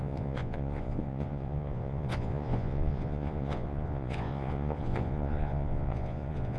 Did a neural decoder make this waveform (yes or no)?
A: yes